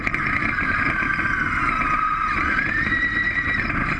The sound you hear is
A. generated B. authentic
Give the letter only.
B